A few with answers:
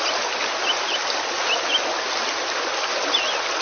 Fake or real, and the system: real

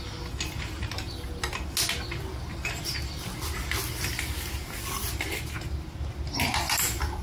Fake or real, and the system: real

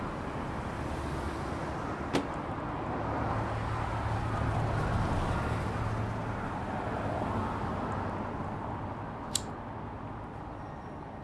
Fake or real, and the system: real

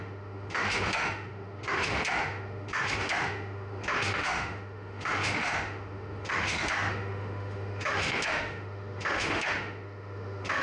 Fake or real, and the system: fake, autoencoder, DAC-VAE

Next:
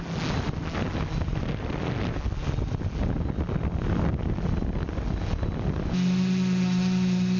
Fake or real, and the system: real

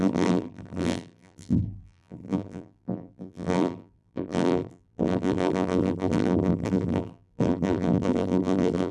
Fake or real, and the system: fake, vocoder, BigVGAN v2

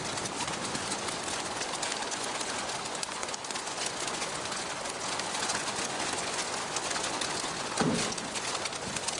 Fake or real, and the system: fake, vocoder, Vocos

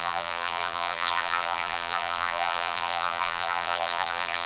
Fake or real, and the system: fake, vocoder, BigVGAN v2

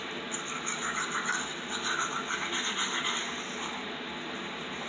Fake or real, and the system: real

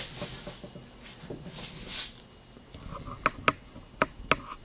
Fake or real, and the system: real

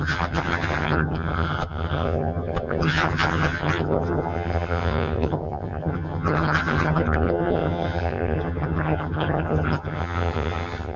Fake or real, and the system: fake, vocoder, HiFi-GAN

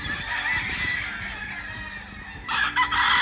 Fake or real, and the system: real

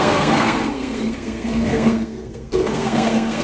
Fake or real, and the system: fake, codec, SNAC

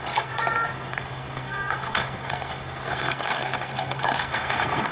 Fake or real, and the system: fake, codec, SNAC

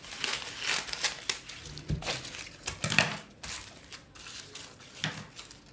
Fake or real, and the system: real